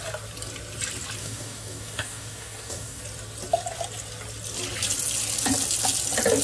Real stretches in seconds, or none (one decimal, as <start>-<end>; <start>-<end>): 0.0-1.2; 3.0-6.4